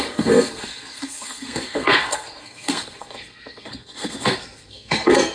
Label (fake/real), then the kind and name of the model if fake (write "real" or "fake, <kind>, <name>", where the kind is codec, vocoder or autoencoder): fake, codec, SNAC